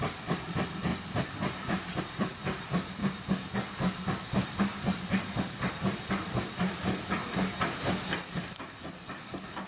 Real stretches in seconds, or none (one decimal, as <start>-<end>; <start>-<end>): 0.9-2.0; 3.0-5.7; 7.2-9.7